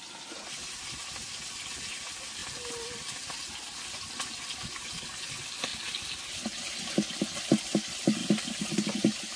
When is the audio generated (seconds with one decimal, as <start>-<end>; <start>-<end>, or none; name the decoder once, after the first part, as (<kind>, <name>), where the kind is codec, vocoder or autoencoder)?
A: none